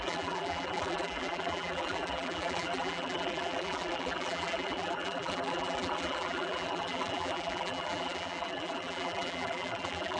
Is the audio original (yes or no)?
no